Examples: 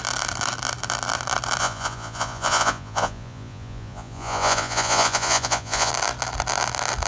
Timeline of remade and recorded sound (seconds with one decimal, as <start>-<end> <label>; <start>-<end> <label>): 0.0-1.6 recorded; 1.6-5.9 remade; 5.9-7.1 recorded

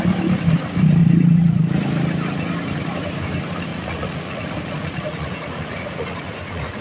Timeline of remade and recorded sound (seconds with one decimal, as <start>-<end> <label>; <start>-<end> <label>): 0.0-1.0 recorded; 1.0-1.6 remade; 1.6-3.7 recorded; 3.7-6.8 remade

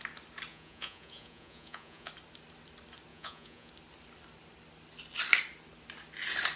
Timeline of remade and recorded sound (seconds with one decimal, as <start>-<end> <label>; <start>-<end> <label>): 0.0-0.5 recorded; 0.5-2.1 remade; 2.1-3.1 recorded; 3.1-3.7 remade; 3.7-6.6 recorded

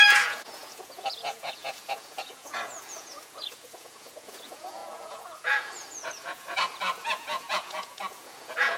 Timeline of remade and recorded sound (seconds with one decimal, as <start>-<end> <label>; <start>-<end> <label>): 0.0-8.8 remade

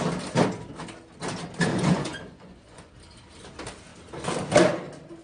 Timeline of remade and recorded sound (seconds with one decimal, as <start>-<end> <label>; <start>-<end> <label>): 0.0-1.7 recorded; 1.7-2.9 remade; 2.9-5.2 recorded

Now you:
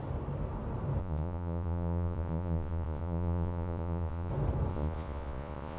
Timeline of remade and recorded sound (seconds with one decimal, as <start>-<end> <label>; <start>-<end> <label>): 0.0-1.0 recorded; 1.0-4.3 remade; 4.3-4.7 recorded; 4.7-5.8 remade

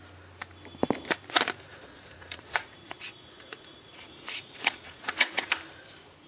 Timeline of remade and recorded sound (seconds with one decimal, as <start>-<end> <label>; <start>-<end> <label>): 0.0-1.7 recorded; 1.7-5.5 remade; 5.5-6.3 recorded